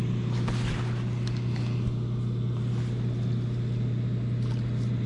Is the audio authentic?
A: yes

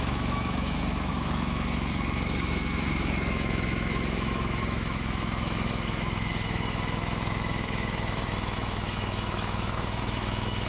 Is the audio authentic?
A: no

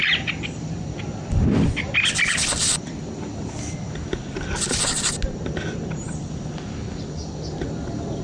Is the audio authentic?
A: yes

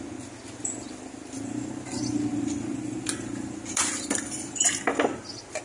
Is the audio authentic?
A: yes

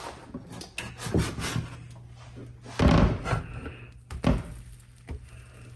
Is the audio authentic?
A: yes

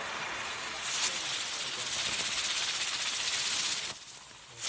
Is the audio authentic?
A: yes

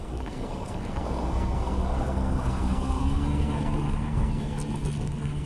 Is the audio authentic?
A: no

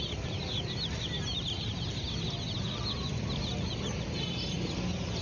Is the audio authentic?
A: yes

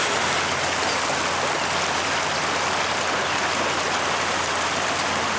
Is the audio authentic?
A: yes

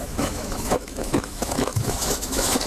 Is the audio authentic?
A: no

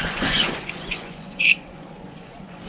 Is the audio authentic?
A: no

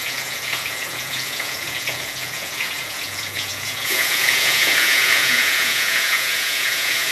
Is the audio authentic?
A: no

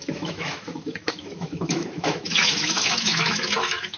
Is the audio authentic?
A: no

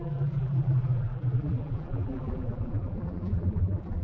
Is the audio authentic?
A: no